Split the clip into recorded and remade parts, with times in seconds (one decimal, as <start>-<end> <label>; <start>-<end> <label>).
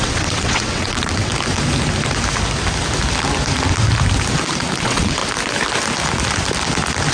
0.0-1.3 remade; 1.3-4.8 recorded; 4.8-5.2 remade; 5.2-7.1 recorded